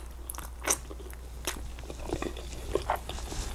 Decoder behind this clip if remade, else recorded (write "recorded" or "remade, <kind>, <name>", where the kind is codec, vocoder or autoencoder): recorded